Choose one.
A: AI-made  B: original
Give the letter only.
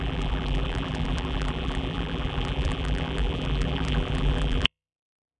A